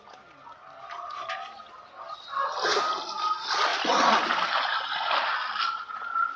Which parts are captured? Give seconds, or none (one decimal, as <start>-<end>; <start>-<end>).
0.0-6.4